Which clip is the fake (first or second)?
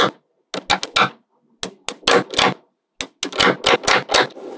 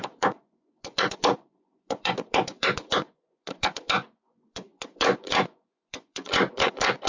second